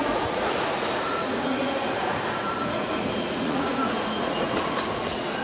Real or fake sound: fake